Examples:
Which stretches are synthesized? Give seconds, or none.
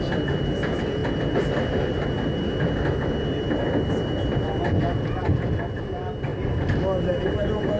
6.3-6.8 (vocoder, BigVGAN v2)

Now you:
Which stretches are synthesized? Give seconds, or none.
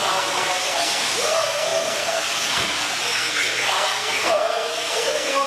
0.0-5.5 (codec, SNAC)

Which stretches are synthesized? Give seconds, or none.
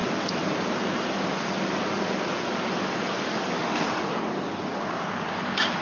none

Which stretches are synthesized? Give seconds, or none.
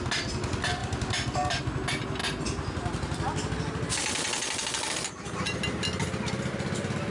none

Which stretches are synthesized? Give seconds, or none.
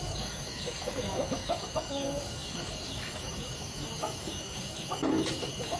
0.0-5.8 (codec, DAC)